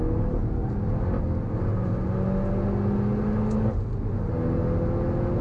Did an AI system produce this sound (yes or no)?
no